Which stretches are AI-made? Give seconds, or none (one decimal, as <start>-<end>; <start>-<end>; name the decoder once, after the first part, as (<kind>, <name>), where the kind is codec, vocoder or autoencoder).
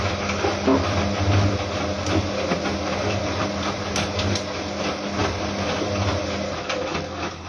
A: none